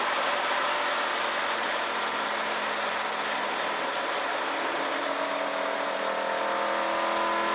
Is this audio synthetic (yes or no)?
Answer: no